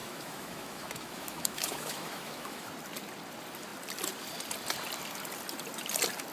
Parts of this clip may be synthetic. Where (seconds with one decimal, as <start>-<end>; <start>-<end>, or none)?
0.0-2.7